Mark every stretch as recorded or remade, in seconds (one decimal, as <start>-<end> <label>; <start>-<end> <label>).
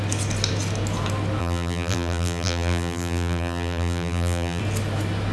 0.0-1.4 recorded; 1.4-4.6 remade; 4.6-5.3 recorded